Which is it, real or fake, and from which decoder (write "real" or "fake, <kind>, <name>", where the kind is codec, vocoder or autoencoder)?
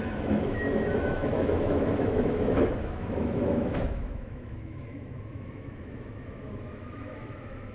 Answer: fake, autoencoder, DAC-VAE